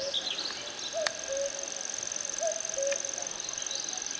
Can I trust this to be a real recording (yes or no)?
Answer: yes